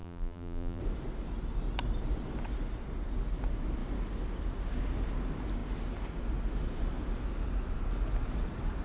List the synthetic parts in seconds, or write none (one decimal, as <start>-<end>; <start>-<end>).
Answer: 0.0-0.8